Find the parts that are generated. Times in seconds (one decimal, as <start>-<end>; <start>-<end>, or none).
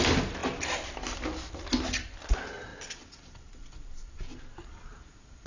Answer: 2.7-5.0